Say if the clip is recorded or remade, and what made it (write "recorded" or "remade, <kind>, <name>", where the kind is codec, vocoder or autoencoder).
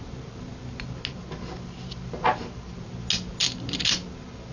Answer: recorded